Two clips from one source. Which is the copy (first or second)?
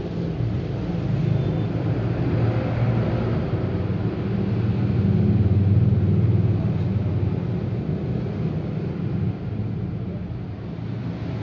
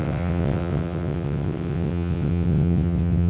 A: second